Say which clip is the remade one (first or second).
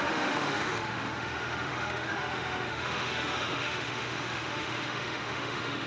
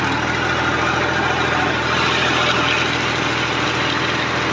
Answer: first